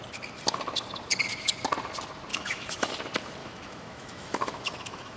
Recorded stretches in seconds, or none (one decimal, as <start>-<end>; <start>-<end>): 0.0-2.3; 2.9-3.4